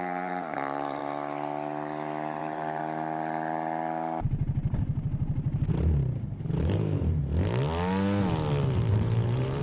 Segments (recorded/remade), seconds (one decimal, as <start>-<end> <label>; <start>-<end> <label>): 0.0-1.0 remade; 1.0-2.4 recorded; 2.4-2.8 remade; 2.8-5.7 recorded; 5.7-7.2 remade; 7.2-8.9 recorded; 8.9-9.6 remade